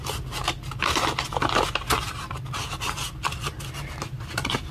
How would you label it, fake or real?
real